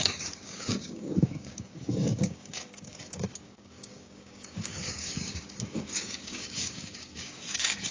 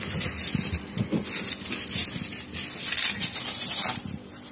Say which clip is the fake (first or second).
first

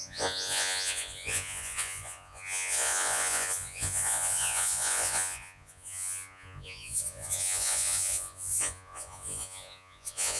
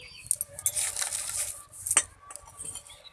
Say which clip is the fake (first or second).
first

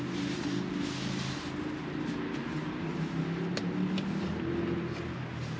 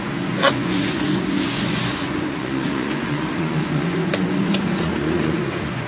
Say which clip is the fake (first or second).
second